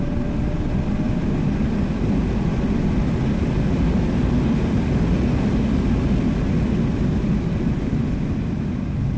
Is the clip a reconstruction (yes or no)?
no